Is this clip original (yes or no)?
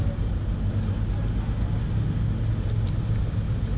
yes